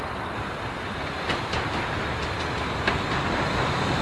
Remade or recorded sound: recorded